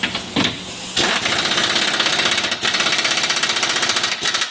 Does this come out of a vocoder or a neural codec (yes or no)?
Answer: no